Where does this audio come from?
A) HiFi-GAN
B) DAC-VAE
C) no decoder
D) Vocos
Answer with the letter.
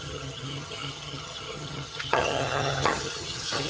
A